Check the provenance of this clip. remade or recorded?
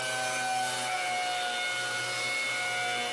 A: recorded